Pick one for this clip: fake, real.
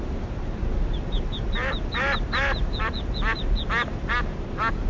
real